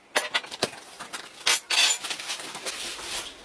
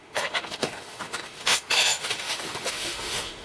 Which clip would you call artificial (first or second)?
second